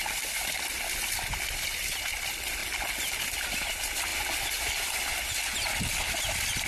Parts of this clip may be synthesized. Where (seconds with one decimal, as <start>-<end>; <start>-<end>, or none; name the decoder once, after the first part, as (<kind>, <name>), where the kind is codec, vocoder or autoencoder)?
none